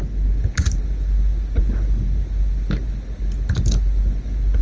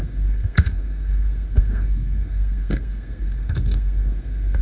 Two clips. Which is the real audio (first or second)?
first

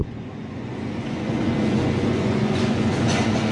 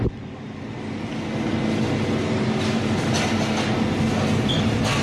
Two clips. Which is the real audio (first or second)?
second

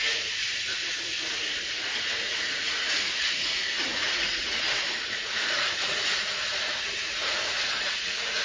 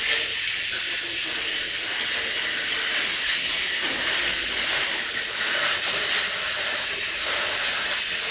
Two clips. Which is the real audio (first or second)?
second